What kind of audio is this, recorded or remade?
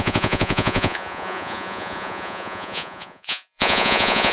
remade